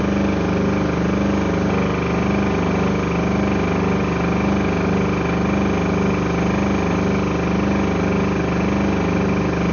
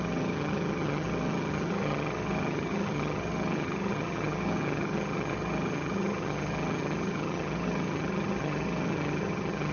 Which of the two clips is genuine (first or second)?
first